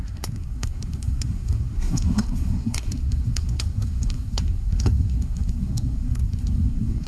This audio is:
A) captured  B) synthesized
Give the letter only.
B